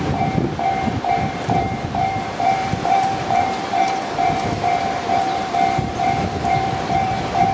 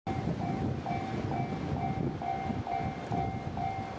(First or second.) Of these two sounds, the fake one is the first